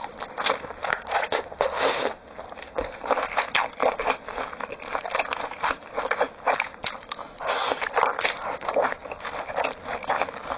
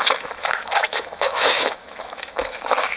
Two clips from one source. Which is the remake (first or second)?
second